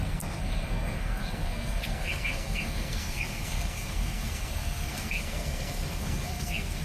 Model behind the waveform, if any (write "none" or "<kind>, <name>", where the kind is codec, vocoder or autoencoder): codec, SNAC